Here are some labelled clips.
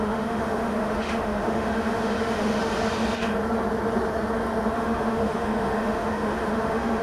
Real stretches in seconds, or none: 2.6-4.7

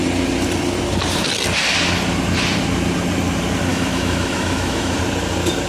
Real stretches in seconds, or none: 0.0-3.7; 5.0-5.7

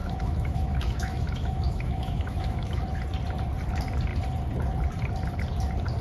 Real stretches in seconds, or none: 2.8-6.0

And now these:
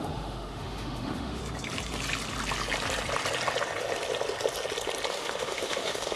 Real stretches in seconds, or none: 1.4-5.1

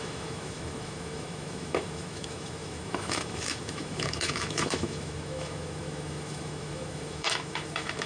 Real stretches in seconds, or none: none

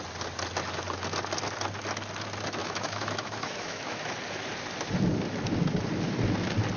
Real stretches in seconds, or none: 0.0-2.6; 4.1-6.8